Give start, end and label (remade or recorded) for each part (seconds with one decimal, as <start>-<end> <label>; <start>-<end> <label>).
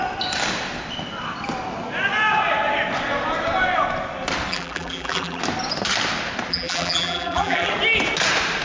0.0-4.5 recorded; 4.5-5.4 remade; 5.4-6.5 recorded; 6.5-7.7 remade; 7.7-8.6 recorded